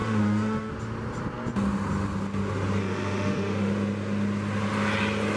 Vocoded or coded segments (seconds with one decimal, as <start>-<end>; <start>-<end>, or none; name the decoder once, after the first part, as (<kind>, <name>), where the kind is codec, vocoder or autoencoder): 0.0-0.7 (autoencoder, DAC-VAE); 2.8-3.7